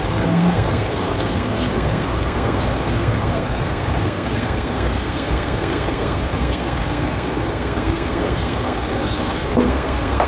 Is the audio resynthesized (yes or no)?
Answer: yes